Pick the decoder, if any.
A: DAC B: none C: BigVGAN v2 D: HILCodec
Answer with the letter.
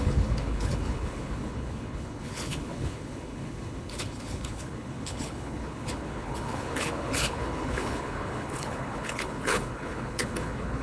D